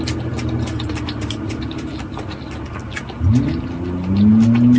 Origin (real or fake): real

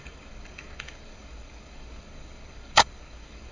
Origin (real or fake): fake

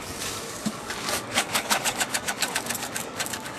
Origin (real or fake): fake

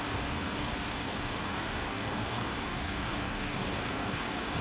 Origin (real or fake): fake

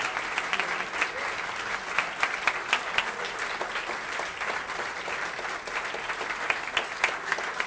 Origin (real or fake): real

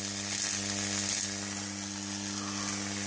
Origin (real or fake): real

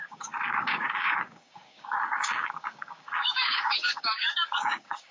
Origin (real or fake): fake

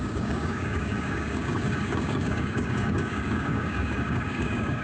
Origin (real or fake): fake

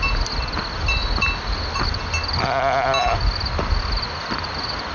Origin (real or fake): real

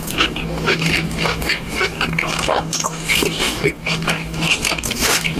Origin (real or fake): fake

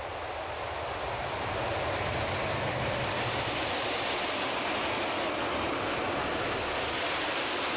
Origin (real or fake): real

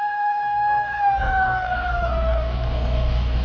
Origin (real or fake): fake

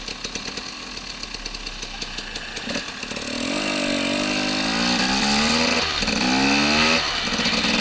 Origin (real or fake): real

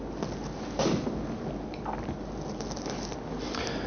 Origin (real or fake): real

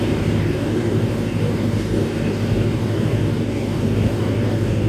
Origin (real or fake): fake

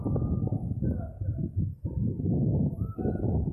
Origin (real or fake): real